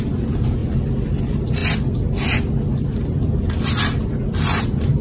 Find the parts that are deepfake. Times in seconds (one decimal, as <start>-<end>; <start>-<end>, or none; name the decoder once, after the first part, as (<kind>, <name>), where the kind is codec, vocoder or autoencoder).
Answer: 0.0-0.6 (vocoder, BigVGAN v2); 1.2-1.6; 4.6-5.0